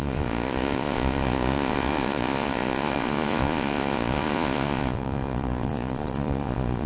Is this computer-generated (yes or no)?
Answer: yes